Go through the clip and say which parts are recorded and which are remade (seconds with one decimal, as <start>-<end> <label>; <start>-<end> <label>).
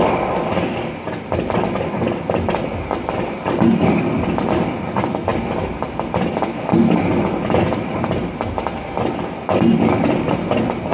0.0-10.9 recorded